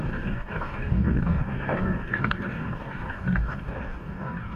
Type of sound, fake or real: fake